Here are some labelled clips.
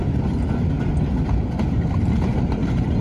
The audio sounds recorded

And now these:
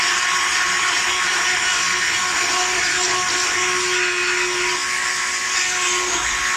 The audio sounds recorded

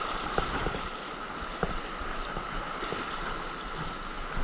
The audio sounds recorded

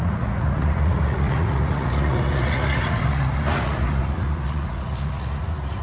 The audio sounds remade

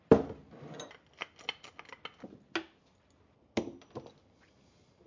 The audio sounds recorded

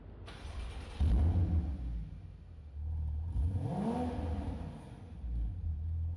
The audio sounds recorded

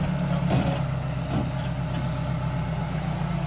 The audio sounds recorded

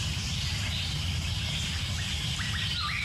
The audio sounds recorded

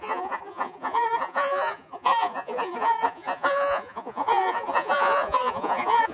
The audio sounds remade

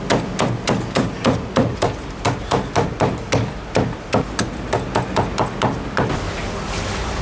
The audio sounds recorded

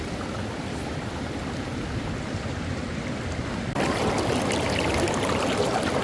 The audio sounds remade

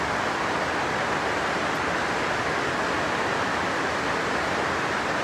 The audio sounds recorded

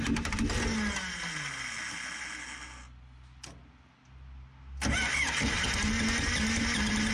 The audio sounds recorded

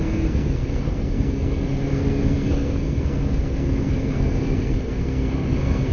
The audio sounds remade